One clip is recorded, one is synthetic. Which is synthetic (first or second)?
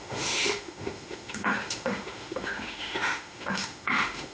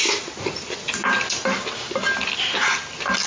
first